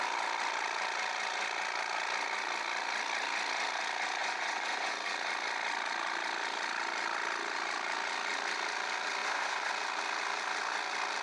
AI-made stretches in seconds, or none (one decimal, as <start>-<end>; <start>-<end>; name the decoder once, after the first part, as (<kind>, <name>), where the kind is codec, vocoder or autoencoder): 4.2-4.9 (vocoder, Vocos); 9.2-9.7